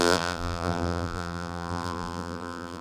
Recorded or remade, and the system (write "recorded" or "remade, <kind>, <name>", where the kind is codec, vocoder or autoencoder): remade, vocoder, BigVGAN v2